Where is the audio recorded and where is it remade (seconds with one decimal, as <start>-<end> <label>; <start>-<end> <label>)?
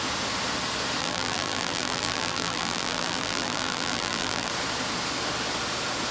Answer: 0.0-1.0 recorded; 1.0-4.5 remade; 4.5-6.1 recorded